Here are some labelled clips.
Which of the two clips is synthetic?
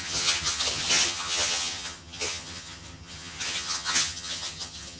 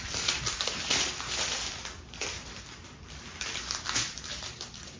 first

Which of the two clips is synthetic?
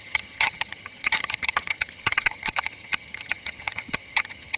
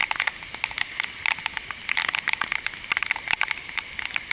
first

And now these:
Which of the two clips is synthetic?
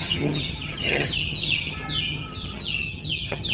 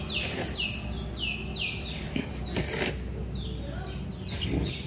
first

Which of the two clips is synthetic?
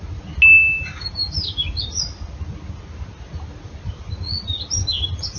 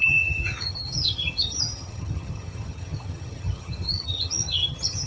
second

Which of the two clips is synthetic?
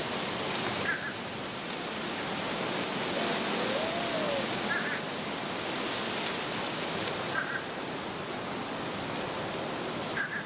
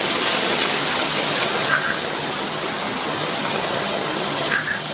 second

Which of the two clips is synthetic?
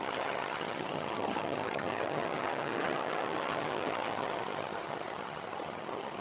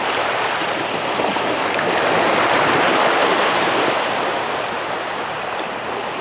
first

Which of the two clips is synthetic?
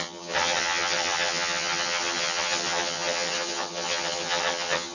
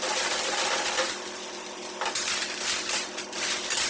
first